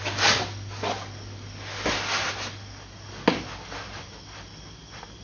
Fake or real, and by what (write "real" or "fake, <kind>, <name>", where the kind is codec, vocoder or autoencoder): real